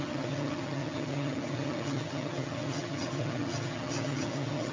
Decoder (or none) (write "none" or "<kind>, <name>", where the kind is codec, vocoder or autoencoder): vocoder, HiFi-GAN